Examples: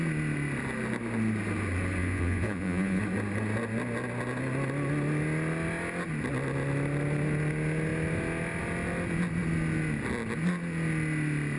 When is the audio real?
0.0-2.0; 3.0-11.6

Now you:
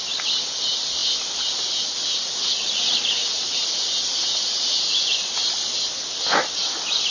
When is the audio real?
0.0-7.1

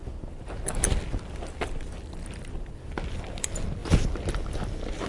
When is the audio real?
0.0-5.1

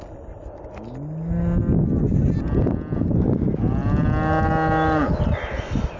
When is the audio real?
0.0-6.0

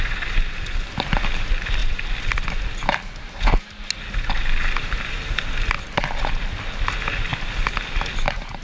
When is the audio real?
0.0-8.6